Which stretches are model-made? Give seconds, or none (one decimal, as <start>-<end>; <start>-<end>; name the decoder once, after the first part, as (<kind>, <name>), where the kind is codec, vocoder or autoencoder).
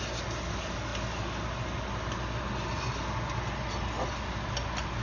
none